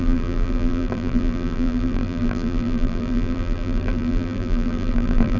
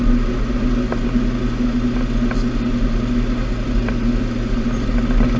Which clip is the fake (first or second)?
first